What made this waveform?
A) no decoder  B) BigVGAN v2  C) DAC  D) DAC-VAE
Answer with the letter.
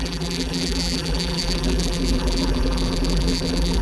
B